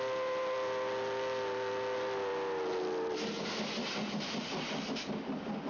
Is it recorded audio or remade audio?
recorded